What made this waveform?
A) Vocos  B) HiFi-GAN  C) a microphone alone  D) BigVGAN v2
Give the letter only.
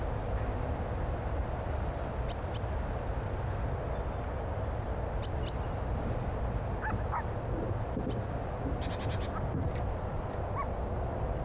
C